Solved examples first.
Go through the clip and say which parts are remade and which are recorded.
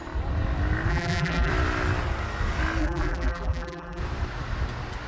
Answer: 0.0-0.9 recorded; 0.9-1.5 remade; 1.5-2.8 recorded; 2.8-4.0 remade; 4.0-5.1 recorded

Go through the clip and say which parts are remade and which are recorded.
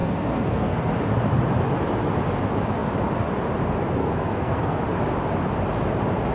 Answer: 0.0-0.9 remade; 0.9-4.0 recorded; 4.0-4.8 remade; 4.8-6.3 recorded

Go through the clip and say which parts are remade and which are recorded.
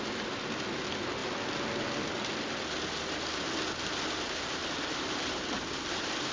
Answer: 0.0-4.6 recorded; 4.6-6.3 remade